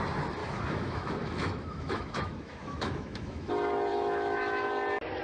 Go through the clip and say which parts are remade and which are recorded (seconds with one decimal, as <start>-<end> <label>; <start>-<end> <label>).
0.0-0.4 recorded; 0.4-3.5 remade; 3.5-3.9 recorded; 3.9-4.7 remade; 4.7-5.2 recorded